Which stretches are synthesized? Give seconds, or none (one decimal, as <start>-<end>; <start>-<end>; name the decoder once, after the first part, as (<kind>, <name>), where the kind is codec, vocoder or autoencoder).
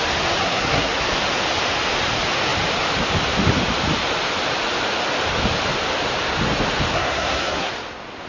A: 0.4-1.0 (codec, SNAC); 6.9-7.7